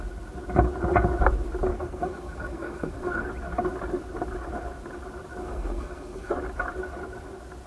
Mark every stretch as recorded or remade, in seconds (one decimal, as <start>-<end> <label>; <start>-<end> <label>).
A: 0.0-1.7 recorded; 1.7-3.3 remade; 3.3-5.4 recorded; 5.4-6.3 remade; 6.3-7.7 recorded